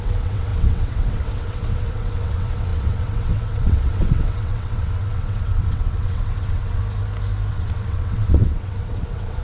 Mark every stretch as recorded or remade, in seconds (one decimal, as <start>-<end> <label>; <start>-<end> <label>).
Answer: 0.0-6.8 remade; 6.8-7.5 recorded; 7.5-9.4 remade